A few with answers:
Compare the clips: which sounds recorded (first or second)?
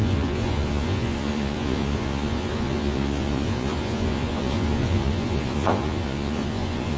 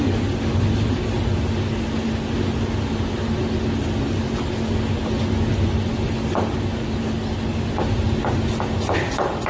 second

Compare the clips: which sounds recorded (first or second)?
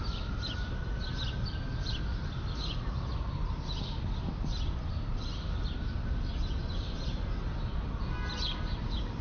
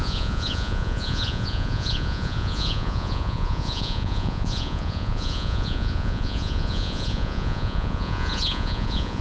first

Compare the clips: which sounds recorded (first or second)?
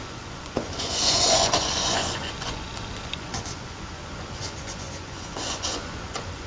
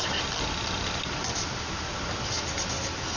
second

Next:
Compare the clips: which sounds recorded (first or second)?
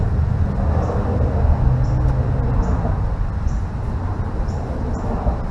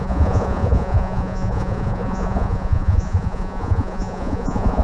first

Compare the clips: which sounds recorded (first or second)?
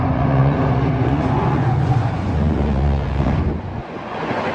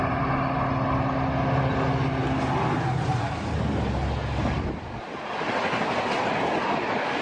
second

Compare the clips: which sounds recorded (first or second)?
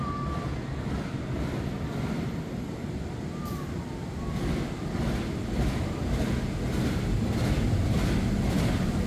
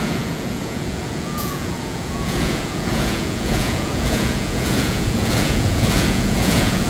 first